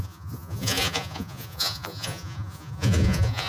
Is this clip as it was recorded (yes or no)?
no